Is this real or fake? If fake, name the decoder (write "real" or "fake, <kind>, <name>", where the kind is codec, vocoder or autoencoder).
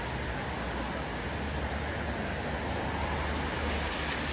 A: real